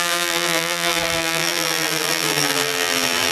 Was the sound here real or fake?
fake